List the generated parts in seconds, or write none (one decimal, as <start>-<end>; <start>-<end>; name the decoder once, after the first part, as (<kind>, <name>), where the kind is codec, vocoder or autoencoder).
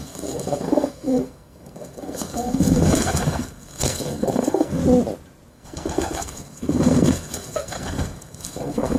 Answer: 0.0-4.8 (codec, SNAC); 5.5-9.0